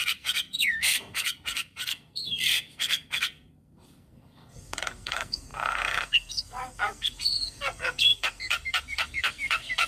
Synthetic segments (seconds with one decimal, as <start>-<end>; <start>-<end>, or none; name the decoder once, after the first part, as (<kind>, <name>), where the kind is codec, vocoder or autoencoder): 0.0-9.9 (codec, SNAC)